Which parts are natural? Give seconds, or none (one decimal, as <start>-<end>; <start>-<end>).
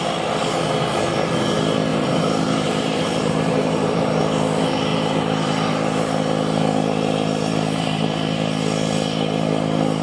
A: 0.0-1.9; 4.2-4.9; 6.1-7.5; 8.1-10.0